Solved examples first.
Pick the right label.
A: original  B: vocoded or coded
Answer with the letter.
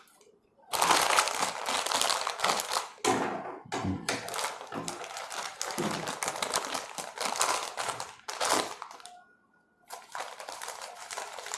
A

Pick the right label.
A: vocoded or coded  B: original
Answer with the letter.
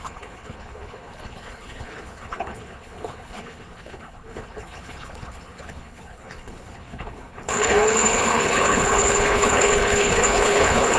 A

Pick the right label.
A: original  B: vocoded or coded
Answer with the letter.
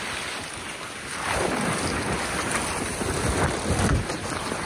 A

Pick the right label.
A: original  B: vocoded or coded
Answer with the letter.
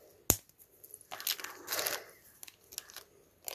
A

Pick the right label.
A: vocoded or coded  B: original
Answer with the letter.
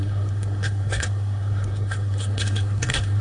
A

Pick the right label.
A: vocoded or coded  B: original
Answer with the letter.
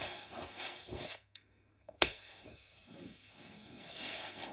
A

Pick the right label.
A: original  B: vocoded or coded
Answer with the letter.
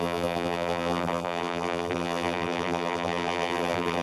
B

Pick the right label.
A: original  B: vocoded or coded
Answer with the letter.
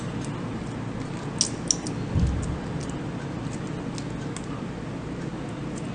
A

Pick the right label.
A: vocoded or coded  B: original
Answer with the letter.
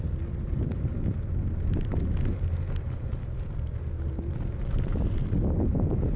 B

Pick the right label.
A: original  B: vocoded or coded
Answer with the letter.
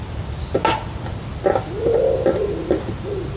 A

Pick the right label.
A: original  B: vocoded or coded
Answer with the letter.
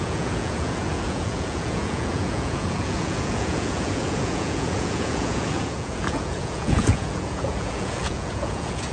B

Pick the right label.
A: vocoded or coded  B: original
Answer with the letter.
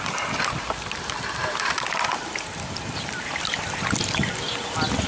B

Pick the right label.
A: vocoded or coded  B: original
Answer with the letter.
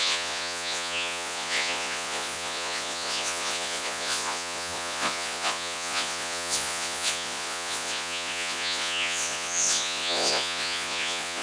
A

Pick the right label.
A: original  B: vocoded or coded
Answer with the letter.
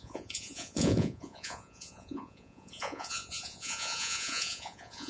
B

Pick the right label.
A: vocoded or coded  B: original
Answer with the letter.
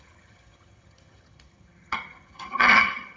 A